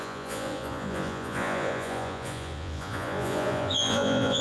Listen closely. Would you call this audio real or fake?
fake